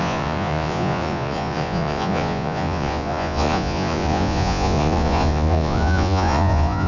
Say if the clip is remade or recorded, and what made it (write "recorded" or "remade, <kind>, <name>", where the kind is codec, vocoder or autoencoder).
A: remade, vocoder, Vocos